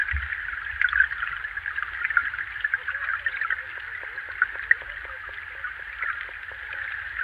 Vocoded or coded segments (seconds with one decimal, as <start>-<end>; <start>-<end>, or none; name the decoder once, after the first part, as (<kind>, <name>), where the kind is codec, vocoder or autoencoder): none